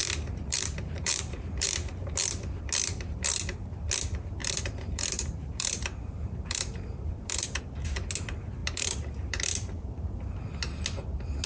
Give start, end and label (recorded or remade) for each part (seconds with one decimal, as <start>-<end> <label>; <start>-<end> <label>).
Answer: 0.0-2.1 remade; 2.1-4.4 recorded; 4.4-7.6 remade; 7.6-8.6 recorded; 8.6-10.4 remade; 10.4-11.5 recorded